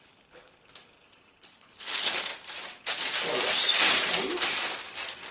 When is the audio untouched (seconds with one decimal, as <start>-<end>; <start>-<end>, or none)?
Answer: 2.3-5.3